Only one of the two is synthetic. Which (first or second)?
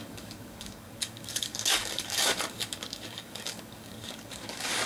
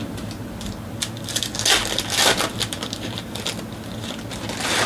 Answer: first